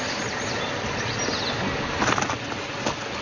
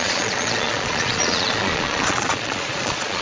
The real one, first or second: first